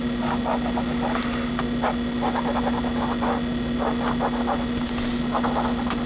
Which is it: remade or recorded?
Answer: recorded